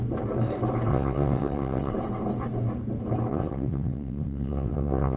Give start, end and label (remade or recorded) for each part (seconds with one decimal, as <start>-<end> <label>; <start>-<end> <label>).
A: 0.0-0.9 recorded; 0.9-1.9 remade; 1.9-3.3 recorded; 3.3-5.2 remade